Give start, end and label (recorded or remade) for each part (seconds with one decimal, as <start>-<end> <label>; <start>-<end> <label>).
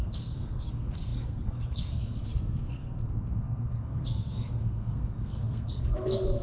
0.0-6.4 remade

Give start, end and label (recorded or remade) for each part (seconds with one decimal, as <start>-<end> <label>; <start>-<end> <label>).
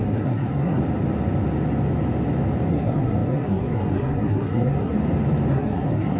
0.0-0.8 remade; 0.8-2.7 recorded; 2.7-5.0 remade; 5.0-5.5 recorded; 5.5-6.2 remade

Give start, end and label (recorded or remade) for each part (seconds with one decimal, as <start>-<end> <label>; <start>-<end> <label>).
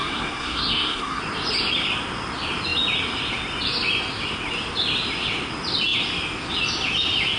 0.0-1.2 remade; 1.2-7.4 recorded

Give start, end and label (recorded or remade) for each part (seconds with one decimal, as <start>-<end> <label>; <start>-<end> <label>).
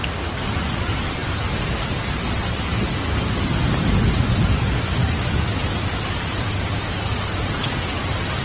0.0-8.4 recorded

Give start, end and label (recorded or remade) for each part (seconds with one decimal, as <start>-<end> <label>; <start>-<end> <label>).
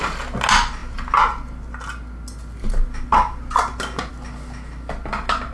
0.0-5.5 recorded